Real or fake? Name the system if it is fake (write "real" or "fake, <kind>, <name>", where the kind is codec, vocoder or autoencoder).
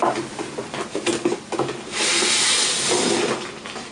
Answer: real